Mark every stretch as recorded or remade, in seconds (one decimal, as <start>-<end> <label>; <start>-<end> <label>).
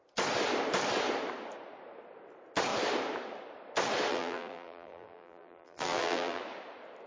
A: 0.0-4.1 recorded; 4.1-6.4 remade; 6.4-7.1 recorded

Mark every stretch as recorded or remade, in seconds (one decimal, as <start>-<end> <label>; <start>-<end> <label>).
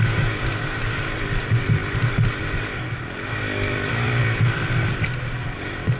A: 0.0-6.0 remade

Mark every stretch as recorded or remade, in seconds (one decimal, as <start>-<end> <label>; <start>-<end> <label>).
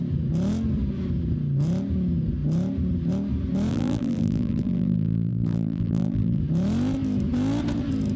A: 0.0-3.7 recorded; 3.7-6.4 remade; 6.4-8.2 recorded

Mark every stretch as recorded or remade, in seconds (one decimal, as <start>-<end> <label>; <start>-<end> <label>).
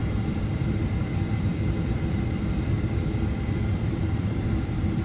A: 0.0-5.0 remade